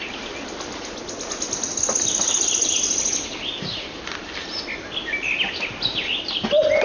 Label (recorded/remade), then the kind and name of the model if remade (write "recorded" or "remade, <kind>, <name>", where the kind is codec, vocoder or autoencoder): recorded